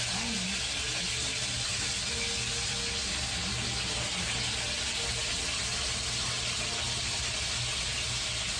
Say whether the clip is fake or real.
real